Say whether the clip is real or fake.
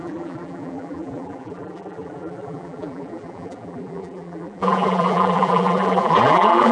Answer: fake